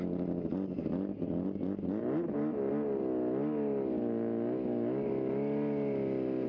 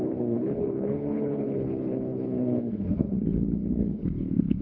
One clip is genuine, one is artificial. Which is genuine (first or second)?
first